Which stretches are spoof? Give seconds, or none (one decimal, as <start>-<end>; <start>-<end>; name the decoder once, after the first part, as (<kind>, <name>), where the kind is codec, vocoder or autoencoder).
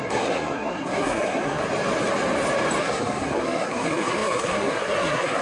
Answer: 0.0-1.6 (codec, SNAC); 2.8-5.4